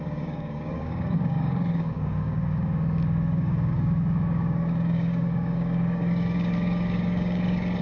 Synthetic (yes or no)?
yes